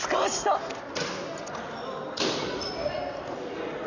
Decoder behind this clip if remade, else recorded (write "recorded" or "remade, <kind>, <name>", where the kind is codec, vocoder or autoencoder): recorded